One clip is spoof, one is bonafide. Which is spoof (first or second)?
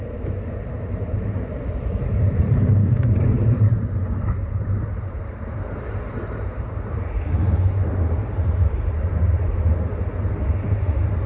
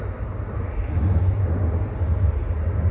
first